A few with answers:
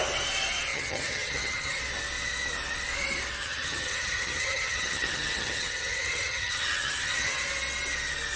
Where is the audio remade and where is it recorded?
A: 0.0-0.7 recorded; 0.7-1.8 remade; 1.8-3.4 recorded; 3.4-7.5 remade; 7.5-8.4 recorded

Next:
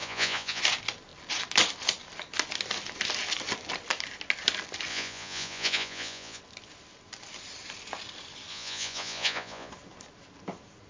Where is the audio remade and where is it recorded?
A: 0.0-0.6 remade; 0.6-4.9 recorded; 4.9-6.4 remade; 6.4-8.5 recorded; 8.5-9.7 remade; 9.7-10.9 recorded

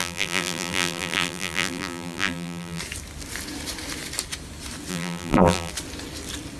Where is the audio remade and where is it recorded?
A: 0.0-2.8 remade; 2.8-4.9 recorded; 4.9-5.7 remade; 5.7-6.6 recorded

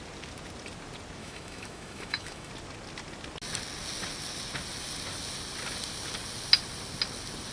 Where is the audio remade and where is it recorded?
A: 0.0-1.2 recorded; 1.2-2.5 remade; 2.5-7.5 recorded

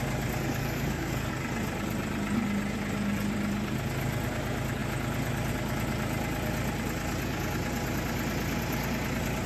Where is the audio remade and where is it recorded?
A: 0.0-0.6 recorded; 0.6-1.3 remade; 1.3-9.5 recorded

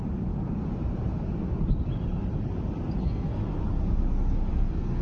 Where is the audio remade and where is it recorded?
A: 0.0-3.0 recorded; 3.0-3.4 remade; 3.4-4.5 recorded; 4.5-5.0 remade

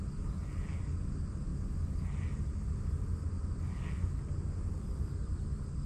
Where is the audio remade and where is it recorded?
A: 0.0-5.9 recorded

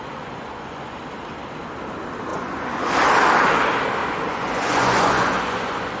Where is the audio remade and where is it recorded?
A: 0.0-1.0 remade; 1.0-2.3 recorded; 2.3-2.9 remade; 2.9-4.0 recorded; 4.0-6.0 remade